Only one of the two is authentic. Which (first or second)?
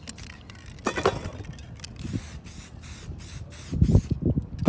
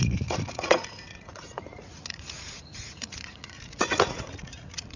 first